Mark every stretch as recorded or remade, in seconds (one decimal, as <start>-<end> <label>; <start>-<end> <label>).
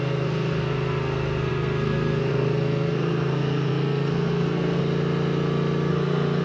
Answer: 0.0-4.8 remade; 4.8-5.9 recorded; 5.9-6.4 remade